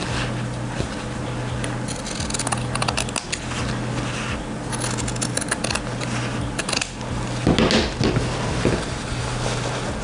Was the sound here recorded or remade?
recorded